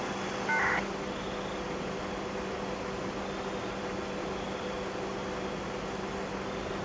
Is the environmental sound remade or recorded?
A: recorded